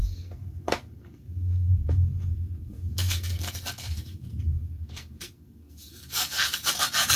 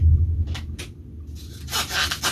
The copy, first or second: first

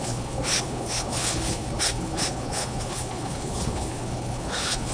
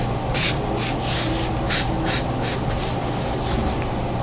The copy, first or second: first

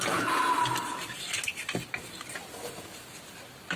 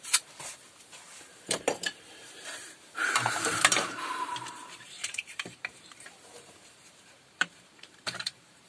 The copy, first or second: second